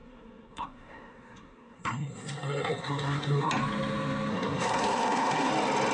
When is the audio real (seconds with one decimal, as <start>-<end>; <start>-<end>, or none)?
3.5-4.3; 5.5-5.9